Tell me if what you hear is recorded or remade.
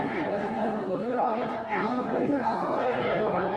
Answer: remade